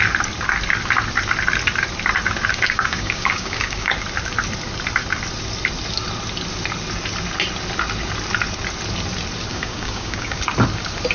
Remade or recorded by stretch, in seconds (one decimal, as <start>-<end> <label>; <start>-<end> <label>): 0.0-2.5 recorded; 2.5-3.9 remade; 3.9-9.5 recorded; 9.5-10.4 remade; 10.4-11.1 recorded